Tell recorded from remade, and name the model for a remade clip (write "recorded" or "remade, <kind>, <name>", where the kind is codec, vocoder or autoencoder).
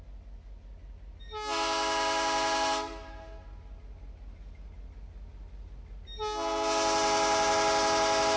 recorded